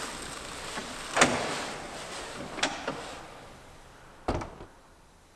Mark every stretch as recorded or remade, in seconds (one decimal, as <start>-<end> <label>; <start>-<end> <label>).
0.0-5.4 recorded